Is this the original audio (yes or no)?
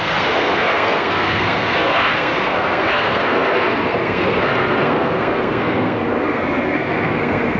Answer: no